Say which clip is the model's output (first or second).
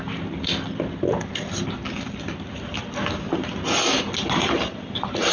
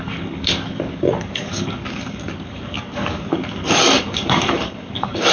second